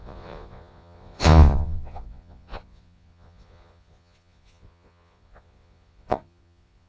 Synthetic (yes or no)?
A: yes